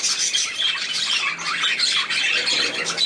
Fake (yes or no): no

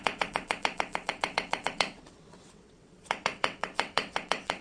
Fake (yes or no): yes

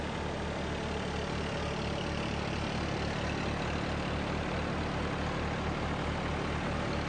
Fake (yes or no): no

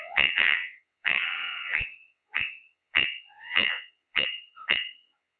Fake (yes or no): yes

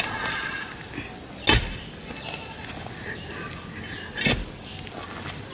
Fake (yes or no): no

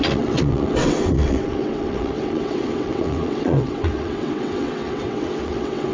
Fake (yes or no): yes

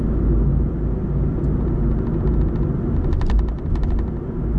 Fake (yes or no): no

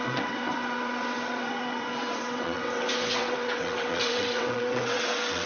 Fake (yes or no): yes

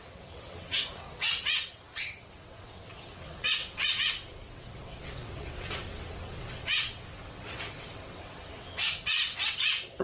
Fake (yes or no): yes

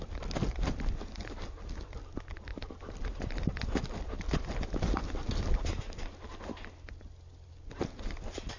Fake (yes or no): no